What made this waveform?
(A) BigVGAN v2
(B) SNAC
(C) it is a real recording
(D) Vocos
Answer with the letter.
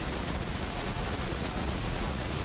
D